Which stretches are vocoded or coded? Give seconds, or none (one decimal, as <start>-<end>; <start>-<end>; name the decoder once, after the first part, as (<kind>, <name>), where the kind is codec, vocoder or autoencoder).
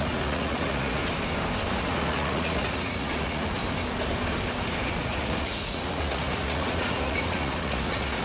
0.0-1.0 (vocoder, Vocos); 1.7-3.6; 4.9-8.2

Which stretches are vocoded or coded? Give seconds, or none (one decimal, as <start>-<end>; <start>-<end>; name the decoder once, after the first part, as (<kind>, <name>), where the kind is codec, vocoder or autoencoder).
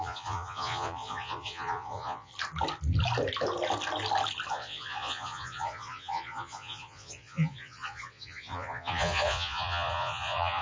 0.0-2.3 (vocoder, Vocos); 4.5-10.6